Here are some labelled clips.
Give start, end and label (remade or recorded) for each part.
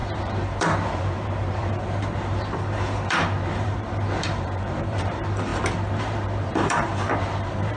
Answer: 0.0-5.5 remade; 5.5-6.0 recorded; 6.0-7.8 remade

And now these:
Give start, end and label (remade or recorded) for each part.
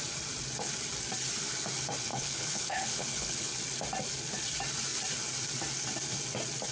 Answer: 0.0-2.1 recorded; 2.1-3.6 remade; 3.6-6.7 recorded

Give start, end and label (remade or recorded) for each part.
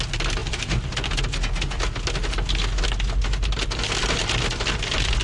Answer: 0.0-5.2 recorded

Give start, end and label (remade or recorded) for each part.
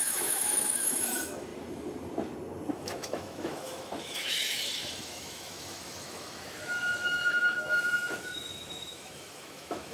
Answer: 0.0-1.5 remade; 1.5-2.7 recorded; 2.7-9.9 remade